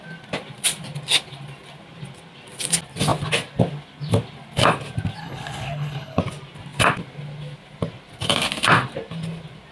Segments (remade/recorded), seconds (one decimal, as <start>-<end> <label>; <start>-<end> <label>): 0.0-5.2 recorded; 5.2-6.2 remade; 6.2-9.7 recorded